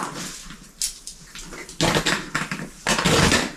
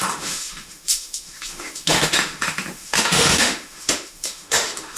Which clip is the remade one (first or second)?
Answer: second